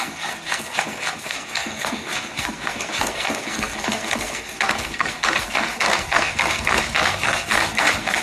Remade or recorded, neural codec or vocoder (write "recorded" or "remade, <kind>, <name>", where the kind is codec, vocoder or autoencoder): remade, codec, SNAC